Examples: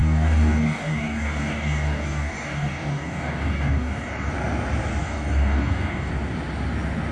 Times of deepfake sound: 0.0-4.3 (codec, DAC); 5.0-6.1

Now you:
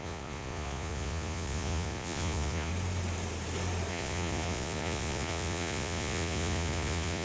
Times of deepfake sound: 0.0-2.7 (vocoder, Vocos); 3.9-7.2

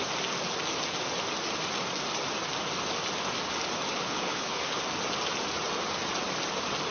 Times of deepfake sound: 3.9-4.8 (codec, HILCodec)

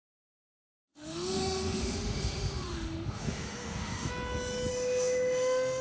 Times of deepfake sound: 0.6-4.1 (autoencoder, DAC-VAE); 4.7-5.8

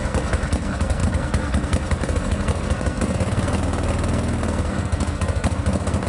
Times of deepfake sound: 0.0-6.1 (codec, SNAC)

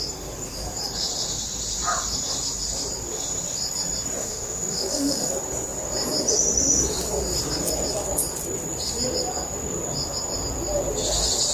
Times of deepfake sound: 4.2-5.3 (autoencoder, DAC-VAE)

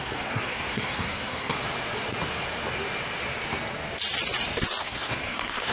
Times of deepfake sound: 0.0-1.6 (codec, SNAC); 4.8-5.7

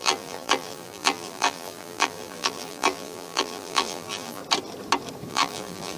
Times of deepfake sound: 0.0-4.4 (vocoder, BigVGAN v2); 5.3-6.0